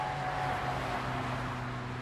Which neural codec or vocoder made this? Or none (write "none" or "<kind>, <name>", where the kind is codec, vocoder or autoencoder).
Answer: none